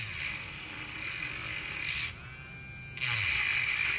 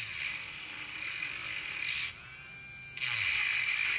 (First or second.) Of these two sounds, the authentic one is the first